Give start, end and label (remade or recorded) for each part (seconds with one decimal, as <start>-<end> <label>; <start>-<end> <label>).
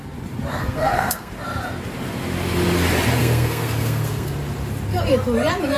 0.0-0.5 recorded; 0.5-1.3 remade; 1.3-3.2 recorded; 3.2-4.3 remade; 4.3-5.8 recorded